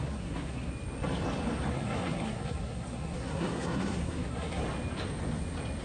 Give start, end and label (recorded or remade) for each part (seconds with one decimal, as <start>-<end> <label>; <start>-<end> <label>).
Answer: 0.0-0.7 remade; 0.7-1.7 recorded; 1.7-4.6 remade; 4.6-5.8 recorded